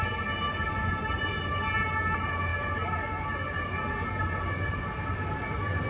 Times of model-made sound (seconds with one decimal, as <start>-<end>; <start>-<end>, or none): none